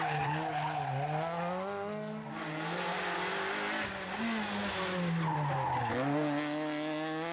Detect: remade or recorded recorded